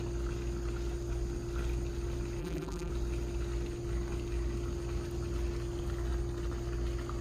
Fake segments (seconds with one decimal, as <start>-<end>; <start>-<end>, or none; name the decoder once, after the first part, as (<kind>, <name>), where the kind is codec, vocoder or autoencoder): 2.4-2.9 (vocoder, BigVGAN v2)